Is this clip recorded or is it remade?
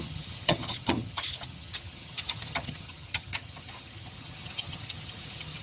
remade